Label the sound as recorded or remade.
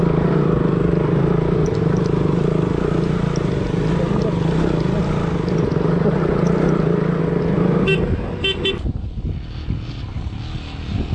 recorded